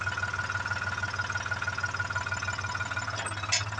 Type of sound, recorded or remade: recorded